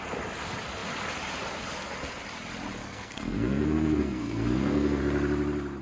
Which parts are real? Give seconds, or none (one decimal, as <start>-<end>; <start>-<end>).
0.0-2.8; 5.0-5.8